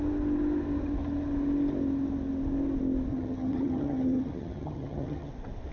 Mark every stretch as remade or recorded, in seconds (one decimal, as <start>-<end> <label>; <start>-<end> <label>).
0.0-3.1 recorded; 3.1-5.3 remade; 5.3-5.7 recorded